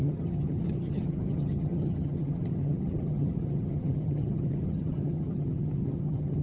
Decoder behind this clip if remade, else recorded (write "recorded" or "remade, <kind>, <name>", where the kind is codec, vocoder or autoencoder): remade, vocoder, HiFi-GAN